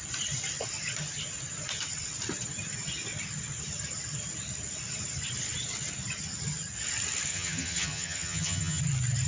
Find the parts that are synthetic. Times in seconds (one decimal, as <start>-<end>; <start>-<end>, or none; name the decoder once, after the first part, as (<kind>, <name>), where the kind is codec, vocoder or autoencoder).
7.3-8.8 (vocoder, HiFi-GAN)